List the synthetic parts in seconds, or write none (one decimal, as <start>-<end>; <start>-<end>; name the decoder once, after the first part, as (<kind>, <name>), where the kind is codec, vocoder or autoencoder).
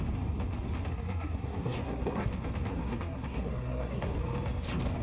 0.9-2.3 (codec, SNAC); 2.7-4.2